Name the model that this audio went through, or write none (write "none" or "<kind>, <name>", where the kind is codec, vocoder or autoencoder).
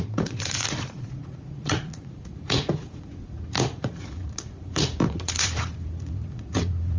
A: vocoder, Vocos